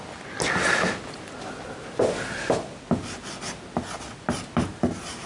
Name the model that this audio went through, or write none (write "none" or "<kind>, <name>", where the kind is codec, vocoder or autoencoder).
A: none